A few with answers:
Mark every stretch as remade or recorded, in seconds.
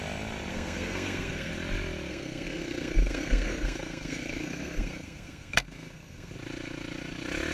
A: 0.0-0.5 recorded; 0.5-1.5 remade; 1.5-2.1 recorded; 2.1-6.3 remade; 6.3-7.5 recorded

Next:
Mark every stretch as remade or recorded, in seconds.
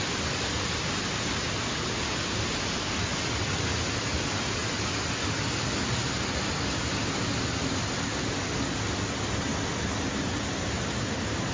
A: 0.0-11.5 recorded